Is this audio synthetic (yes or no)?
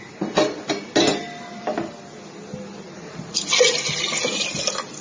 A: no